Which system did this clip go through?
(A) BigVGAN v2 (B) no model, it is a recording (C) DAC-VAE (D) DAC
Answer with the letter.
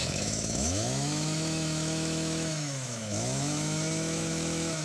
C